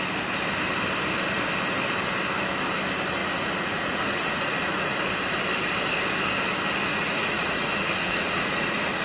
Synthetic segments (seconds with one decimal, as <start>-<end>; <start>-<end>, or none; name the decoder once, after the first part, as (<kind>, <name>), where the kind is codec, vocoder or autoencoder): 3.2-4.9 (vocoder, Vocos); 6.9-9.0